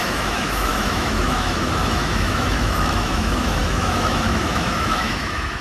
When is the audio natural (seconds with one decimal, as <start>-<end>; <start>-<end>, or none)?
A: none

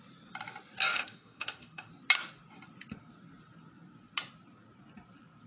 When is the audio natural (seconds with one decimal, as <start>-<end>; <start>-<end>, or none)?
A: 0.0-0.9; 1.9-5.5

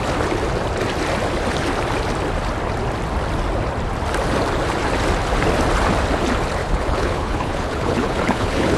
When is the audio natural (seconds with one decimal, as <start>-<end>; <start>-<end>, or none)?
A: 0.0-6.6

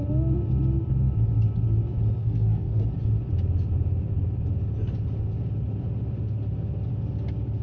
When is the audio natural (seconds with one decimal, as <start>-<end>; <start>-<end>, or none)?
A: 0.0-2.2; 2.8-7.6

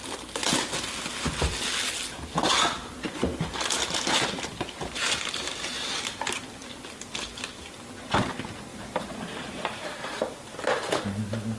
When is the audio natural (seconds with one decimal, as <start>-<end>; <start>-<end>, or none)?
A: 0.0-3.3; 5.9-8.7; 10.0-11.6

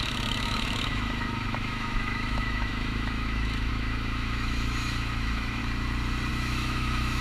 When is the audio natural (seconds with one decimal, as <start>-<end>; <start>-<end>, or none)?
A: 5.6-6.3